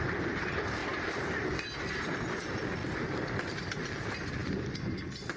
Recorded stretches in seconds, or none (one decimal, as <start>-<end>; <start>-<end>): 0.0-5.4